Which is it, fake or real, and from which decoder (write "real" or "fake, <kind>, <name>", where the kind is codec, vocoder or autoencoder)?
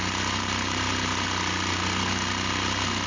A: real